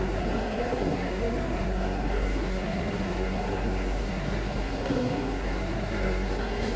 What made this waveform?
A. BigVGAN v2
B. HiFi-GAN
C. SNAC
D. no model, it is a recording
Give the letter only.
C